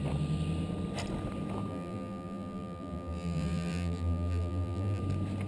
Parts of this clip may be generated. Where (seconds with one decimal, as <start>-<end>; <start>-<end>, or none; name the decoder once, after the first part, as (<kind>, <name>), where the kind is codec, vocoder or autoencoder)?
1.7-5.0 (vocoder, BigVGAN v2)